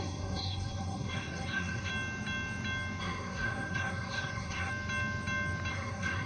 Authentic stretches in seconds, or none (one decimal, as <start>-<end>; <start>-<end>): 1.9-3.0; 4.7-5.7